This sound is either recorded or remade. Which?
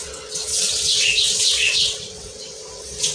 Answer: remade